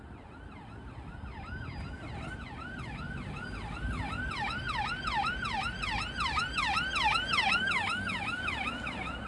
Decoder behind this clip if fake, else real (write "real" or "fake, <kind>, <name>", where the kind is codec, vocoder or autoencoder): real